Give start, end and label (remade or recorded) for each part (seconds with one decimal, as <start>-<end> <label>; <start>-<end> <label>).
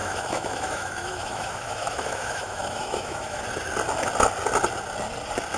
0.0-3.4 remade; 3.4-5.6 recorded